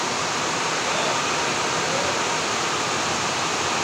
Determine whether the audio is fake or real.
real